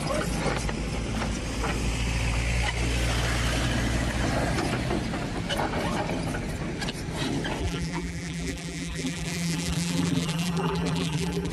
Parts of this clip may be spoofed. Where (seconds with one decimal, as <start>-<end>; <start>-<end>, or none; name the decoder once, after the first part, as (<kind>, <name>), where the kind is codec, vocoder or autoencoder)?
7.6-11.5 (vocoder, BigVGAN v2)